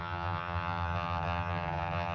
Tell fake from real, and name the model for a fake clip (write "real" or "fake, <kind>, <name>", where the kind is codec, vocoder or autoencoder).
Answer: fake, vocoder, HiFi-GAN